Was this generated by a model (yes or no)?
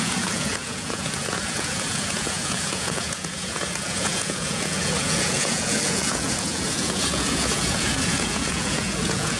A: yes